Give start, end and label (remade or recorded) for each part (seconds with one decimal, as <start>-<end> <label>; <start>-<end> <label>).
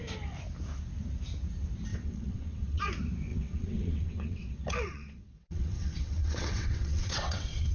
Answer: 0.0-1.9 recorded; 1.9-2.9 remade; 2.9-3.3 recorded; 3.3-7.7 remade